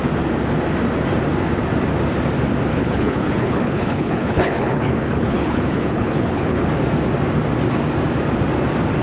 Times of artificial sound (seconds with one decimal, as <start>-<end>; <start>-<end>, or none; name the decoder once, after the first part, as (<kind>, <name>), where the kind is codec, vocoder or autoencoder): 2.7-6.7 (codec, HILCodec)